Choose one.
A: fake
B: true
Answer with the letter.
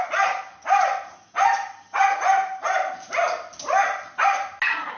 B